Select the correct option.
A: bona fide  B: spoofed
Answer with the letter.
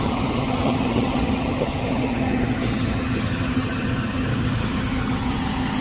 B